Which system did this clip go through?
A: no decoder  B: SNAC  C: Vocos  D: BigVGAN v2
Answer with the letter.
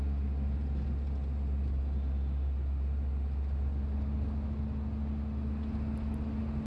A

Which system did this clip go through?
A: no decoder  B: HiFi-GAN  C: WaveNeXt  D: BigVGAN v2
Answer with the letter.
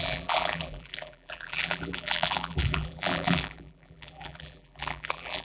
D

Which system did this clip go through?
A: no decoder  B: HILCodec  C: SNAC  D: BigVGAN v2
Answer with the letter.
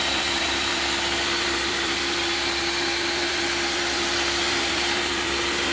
D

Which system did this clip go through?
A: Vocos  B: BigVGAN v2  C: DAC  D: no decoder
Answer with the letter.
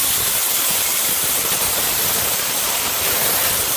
B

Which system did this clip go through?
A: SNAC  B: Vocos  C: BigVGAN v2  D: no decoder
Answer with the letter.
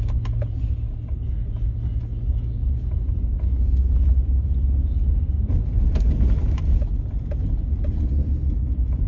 D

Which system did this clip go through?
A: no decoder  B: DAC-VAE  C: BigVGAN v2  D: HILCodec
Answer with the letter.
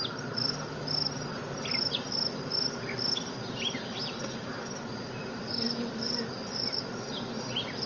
A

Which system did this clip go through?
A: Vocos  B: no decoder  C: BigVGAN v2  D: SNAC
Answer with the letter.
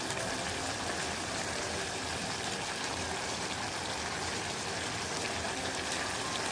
B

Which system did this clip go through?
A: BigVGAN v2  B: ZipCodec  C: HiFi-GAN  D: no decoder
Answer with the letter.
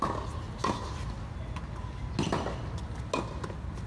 D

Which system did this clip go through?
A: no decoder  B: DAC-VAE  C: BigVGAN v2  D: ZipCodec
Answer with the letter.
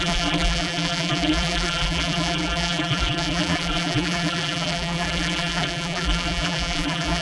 C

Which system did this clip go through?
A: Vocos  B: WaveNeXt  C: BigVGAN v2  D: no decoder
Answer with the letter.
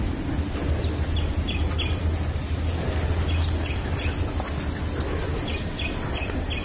D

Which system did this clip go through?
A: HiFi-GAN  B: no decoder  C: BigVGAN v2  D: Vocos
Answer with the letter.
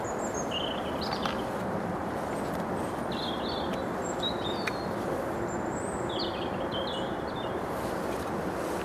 C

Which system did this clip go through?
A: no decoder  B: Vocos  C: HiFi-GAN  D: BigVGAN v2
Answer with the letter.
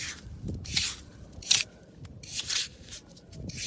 D